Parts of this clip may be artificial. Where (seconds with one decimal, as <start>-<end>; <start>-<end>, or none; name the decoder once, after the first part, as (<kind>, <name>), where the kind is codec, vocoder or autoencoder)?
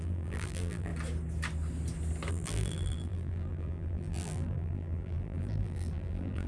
0.0-0.9 (vocoder, BigVGAN v2); 2.3-6.5